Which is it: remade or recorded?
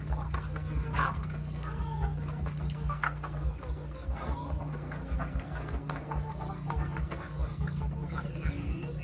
remade